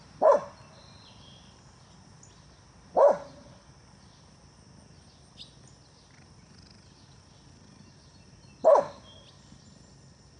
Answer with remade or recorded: recorded